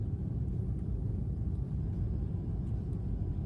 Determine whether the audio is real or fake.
real